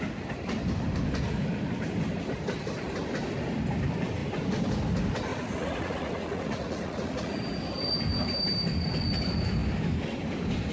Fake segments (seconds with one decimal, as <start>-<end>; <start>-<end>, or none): 5.3-7.4